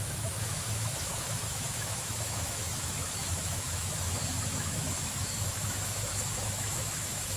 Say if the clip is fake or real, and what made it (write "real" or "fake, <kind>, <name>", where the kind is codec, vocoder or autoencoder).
fake, autoencoder, DAC-VAE